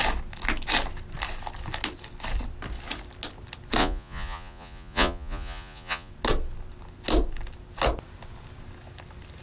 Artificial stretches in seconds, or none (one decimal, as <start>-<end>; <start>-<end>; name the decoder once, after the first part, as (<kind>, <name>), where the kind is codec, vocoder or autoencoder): 3.8-6.1 (vocoder, Vocos)